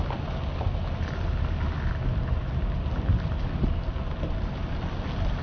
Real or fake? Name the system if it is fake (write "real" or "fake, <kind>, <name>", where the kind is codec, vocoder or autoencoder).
real